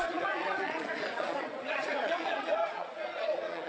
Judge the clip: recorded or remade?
remade